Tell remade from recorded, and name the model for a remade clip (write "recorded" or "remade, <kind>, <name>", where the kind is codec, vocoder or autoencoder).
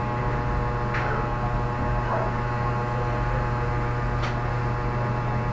recorded